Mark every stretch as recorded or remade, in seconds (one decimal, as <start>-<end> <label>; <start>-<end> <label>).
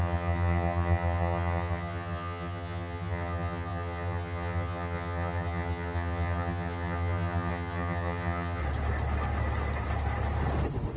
0.0-8.6 remade; 8.6-11.0 recorded